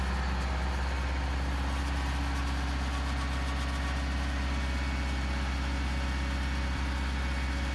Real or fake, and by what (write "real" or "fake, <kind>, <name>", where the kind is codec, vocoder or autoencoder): real